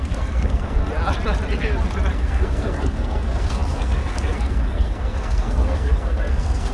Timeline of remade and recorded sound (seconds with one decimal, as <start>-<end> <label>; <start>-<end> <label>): 0.0-0.8 remade; 0.8-2.1 recorded; 2.1-6.7 remade